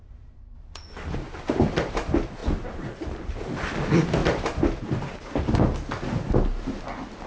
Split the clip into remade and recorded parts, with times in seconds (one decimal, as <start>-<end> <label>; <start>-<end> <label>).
0.0-7.3 recorded